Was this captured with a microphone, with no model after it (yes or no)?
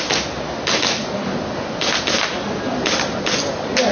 yes